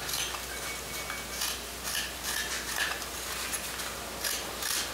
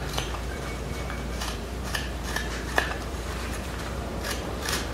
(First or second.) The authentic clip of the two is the first